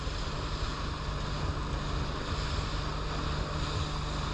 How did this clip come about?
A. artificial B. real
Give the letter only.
B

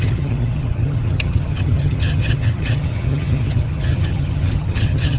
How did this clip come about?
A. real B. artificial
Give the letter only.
B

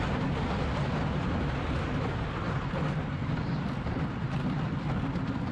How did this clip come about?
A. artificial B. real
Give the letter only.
B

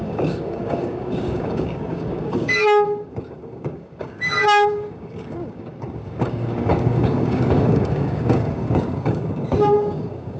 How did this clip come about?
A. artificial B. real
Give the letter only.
A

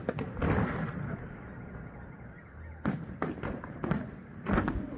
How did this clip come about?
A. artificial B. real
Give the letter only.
B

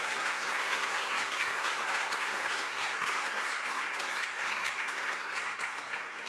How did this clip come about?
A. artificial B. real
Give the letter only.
A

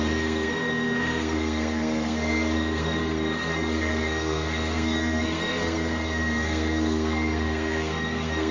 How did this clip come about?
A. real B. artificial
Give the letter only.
B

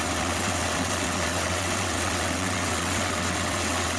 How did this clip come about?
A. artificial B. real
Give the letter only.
A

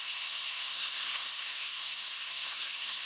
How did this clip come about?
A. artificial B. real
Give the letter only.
A